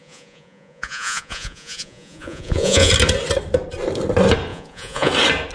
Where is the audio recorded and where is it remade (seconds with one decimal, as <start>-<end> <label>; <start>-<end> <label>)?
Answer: 0.0-2.9 remade; 2.9-4.5 recorded; 4.5-5.1 remade; 5.1-5.5 recorded